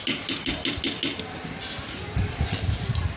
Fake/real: real